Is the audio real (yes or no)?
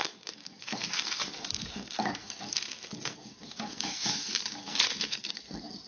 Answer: no